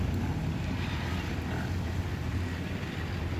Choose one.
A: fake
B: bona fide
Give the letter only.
B